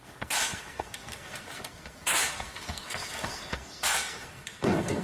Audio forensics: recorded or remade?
remade